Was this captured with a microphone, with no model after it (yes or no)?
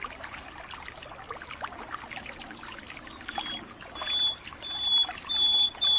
yes